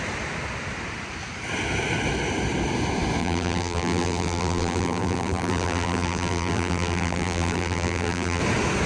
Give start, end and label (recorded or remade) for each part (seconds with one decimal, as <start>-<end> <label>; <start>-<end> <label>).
0.0-3.2 recorded; 3.2-8.4 remade; 8.4-8.9 recorded